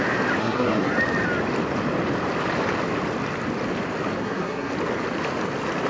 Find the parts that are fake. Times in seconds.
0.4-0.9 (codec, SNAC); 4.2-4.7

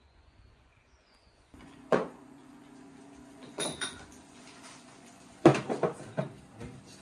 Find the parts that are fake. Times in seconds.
0.0-5.5 (vocoder, Vocos)

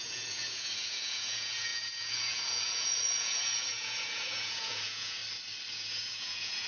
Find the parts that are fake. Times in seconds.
0.0-5.2 (vocoder, Vocos); 5.7-6.7

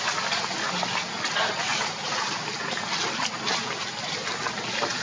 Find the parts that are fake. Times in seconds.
none